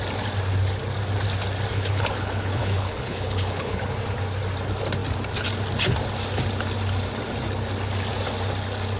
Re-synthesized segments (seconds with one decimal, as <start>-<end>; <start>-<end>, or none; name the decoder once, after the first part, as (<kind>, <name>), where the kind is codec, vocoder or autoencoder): 1.7-3.8 (codec, HILCodec)